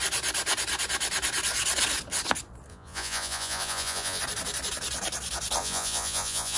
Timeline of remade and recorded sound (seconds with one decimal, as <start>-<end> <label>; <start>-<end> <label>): 0.0-2.7 recorded; 2.7-4.2 remade; 4.2-5.6 recorded; 5.6-6.6 remade

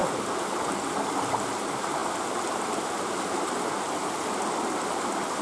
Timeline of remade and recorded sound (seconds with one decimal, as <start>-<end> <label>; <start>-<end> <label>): 0.0-5.4 recorded

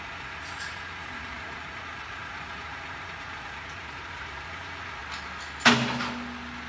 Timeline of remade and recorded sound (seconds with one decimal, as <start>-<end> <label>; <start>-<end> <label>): 0.0-5.0 remade; 5.0-6.7 recorded